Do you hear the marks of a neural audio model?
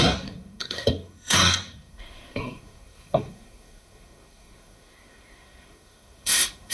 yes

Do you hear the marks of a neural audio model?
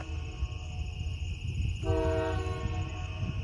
no